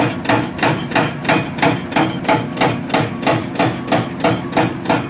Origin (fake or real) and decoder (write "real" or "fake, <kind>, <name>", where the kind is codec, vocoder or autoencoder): real